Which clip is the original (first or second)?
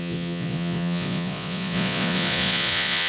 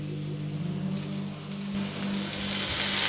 second